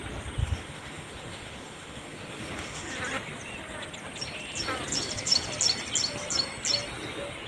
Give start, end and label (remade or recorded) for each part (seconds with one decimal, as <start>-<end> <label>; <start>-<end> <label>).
0.0-0.4 recorded; 0.4-2.9 remade; 2.9-7.5 recorded